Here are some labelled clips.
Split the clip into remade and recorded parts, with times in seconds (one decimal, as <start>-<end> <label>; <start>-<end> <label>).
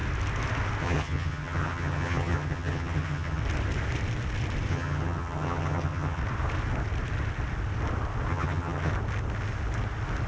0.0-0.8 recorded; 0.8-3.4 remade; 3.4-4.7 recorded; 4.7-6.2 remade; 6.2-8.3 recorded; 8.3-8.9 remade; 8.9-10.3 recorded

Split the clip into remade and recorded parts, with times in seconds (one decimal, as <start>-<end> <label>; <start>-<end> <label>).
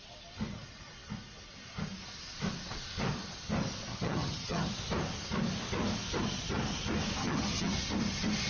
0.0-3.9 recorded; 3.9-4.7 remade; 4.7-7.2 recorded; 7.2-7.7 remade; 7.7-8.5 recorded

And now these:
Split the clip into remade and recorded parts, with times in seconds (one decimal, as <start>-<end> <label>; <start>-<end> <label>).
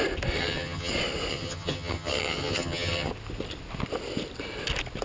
0.0-0.4 recorded; 0.4-0.9 remade; 0.9-1.3 recorded; 1.3-3.1 remade; 3.1-5.0 recorded